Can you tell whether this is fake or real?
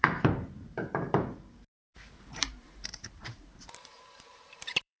fake